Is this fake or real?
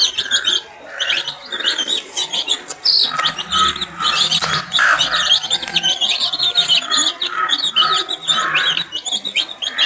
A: real